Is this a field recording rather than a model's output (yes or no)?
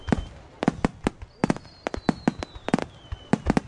yes